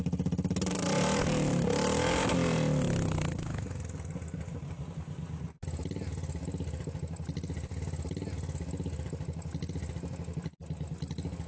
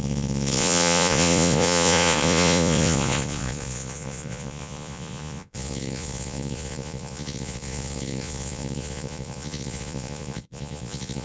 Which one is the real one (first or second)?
first